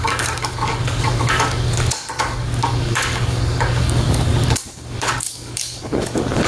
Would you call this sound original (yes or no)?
no